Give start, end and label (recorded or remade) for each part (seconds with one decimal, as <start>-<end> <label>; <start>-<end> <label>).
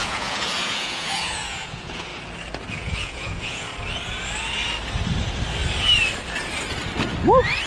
0.0-2.1 remade; 2.1-2.7 recorded; 2.7-3.7 remade; 3.7-7.7 recorded